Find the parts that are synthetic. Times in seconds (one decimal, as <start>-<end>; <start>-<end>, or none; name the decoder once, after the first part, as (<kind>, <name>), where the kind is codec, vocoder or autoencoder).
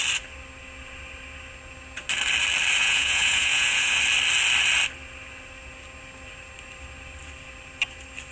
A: 2.8-4.0 (vocoder, Vocos)